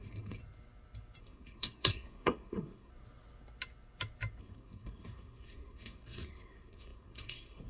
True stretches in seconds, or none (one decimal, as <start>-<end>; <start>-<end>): 0.4-1.2; 2.9-4.4